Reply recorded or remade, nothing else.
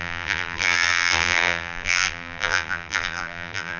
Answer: remade